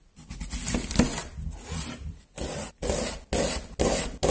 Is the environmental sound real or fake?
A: real